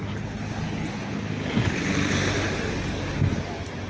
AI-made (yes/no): no